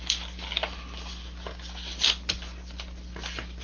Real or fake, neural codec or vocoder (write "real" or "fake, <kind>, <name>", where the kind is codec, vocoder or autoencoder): real